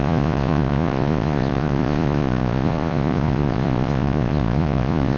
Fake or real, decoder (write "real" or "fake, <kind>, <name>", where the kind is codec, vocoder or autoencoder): fake, vocoder, Vocos